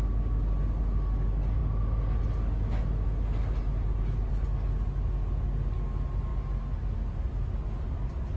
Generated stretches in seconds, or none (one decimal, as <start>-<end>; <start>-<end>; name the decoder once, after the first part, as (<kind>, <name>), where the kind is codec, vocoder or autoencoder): none